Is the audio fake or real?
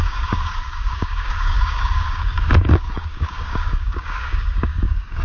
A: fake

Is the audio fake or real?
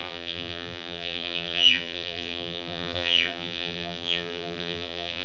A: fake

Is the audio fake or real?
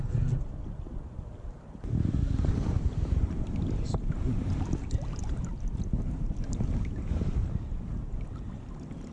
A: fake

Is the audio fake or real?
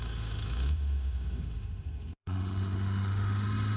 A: fake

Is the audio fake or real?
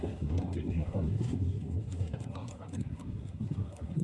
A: fake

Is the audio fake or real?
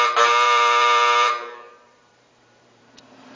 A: fake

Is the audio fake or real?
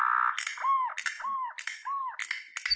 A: real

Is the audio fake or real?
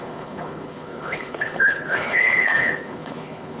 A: fake